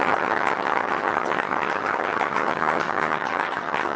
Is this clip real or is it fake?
fake